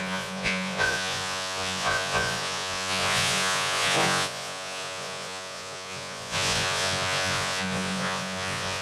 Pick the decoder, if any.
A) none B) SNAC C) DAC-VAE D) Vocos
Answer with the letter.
D